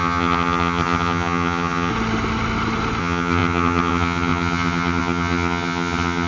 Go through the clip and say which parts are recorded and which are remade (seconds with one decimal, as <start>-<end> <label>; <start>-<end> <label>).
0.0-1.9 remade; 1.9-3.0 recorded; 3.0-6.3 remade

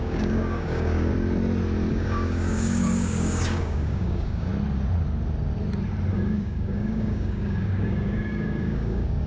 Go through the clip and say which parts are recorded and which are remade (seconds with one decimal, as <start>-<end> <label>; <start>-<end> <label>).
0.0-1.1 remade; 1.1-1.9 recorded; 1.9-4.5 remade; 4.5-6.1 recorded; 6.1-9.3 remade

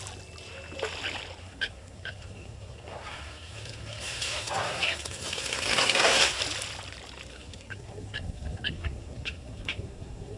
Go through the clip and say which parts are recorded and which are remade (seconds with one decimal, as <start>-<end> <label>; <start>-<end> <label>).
0.0-1.4 recorded; 1.4-6.4 remade; 6.4-7.3 recorded; 7.3-10.4 remade

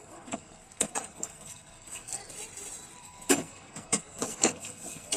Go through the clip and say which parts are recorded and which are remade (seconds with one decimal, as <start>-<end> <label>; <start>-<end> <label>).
0.0-2.2 remade; 2.2-3.0 recorded; 3.0-5.2 remade

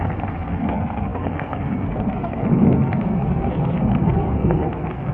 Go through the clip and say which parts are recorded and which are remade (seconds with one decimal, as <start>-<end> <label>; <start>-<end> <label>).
0.0-5.1 remade

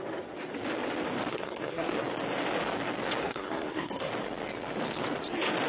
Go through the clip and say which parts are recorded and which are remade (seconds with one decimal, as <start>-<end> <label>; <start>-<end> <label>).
0.0-1.3 recorded; 1.3-1.9 remade; 1.9-3.2 recorded; 3.2-4.1 remade; 4.1-5.7 recorded